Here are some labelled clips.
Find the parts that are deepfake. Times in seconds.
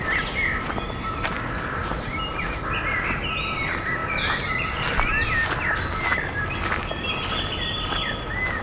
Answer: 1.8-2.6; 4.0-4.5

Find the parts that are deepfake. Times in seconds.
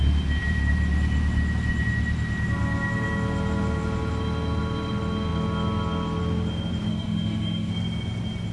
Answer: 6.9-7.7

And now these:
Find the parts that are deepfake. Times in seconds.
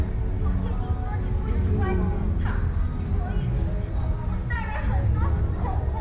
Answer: none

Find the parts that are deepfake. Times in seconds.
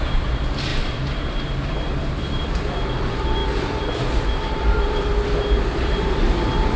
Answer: 0.0-5.1; 5.6-6.8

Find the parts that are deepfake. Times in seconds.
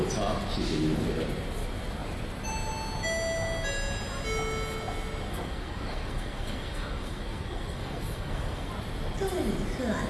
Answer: 5.3-8.7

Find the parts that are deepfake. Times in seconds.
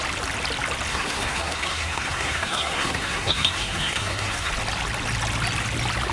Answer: 0.9-4.5